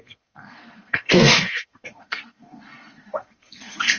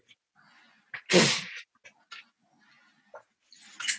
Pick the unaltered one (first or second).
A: second